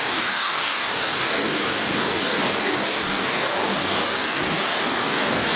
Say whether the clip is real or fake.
fake